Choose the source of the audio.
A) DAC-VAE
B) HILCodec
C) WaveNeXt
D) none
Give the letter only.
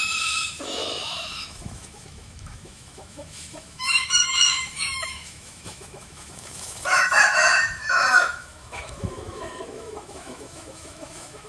A